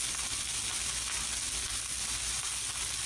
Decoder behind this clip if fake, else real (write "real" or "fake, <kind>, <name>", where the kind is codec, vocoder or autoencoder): real